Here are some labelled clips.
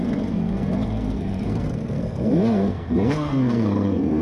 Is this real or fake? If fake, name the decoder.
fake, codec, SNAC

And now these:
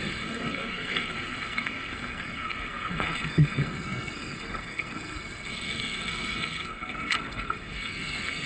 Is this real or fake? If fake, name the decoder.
fake, codec, SNAC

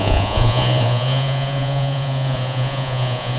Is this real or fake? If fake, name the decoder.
fake, vocoder, Vocos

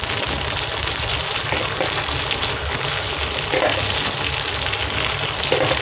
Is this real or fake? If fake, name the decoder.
real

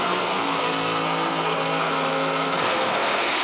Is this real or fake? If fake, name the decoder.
fake, codec, SNAC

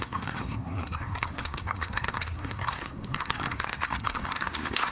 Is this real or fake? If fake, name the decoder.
fake, codec, SNAC